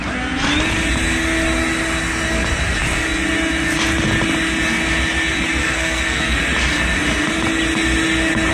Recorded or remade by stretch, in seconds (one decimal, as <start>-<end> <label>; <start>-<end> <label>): 0.0-5.6 recorded; 5.6-6.4 remade; 6.4-8.5 recorded